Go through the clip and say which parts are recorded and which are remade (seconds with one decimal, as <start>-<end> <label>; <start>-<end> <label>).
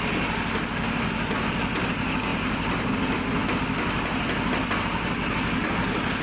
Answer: 0.0-6.2 recorded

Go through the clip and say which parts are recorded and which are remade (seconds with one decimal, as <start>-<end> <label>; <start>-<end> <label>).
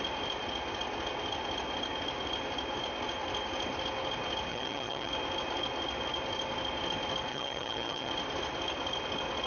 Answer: 0.0-4.5 recorded; 4.5-5.1 remade; 5.1-7.3 recorded; 7.3-8.1 remade; 8.1-9.5 recorded